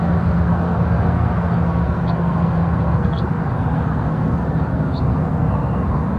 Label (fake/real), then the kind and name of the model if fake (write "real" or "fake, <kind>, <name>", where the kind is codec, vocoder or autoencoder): fake, codec, SNAC